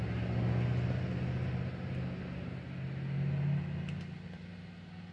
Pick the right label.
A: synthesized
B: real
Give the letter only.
B